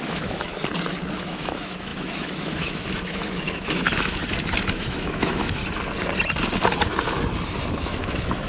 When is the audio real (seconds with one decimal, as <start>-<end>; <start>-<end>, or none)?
0.5-1.2; 4.2-4.7; 5.6-7.7